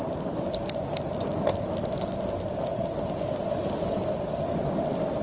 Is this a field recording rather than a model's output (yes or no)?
no